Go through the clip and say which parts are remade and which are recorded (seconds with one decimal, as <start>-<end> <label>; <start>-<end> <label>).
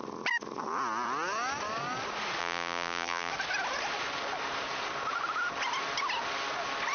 0.0-2.4 recorded; 2.4-3.3 remade; 3.3-6.9 recorded